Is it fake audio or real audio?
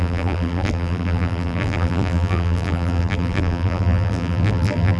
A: fake